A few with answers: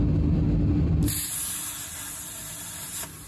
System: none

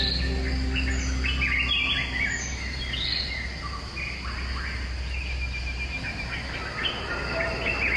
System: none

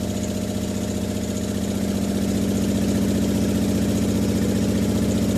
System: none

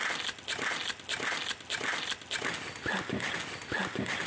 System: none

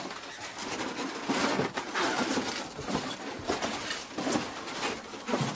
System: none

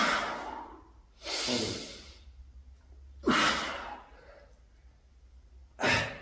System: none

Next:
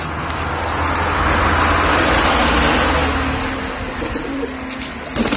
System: none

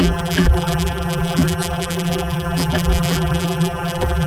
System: vocoder, BigVGAN v2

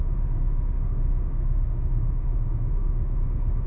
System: autoencoder, DAC-VAE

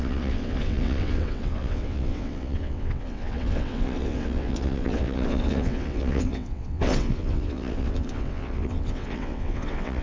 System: vocoder, WaveNeXt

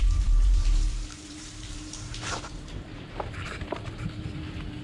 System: vocoder, BigVGAN v2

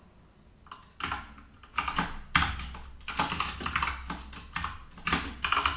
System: none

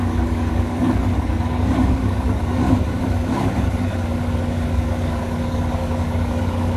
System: codec, DAC